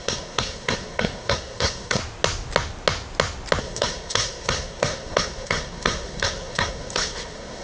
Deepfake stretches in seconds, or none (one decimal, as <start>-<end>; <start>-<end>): 0.0-2.0; 3.6-7.6